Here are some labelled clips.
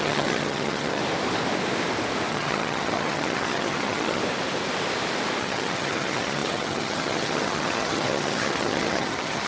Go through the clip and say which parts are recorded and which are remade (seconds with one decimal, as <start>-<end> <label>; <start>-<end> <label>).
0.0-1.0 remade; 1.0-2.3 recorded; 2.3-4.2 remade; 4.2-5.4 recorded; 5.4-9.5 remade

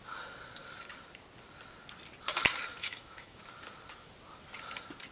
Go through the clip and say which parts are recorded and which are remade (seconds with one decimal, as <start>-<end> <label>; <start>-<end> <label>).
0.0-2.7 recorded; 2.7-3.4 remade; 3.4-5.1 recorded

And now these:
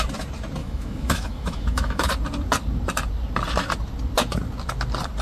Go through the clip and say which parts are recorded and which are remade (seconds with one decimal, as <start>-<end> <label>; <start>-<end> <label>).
0.0-0.6 recorded; 0.6-2.1 remade; 2.1-5.2 recorded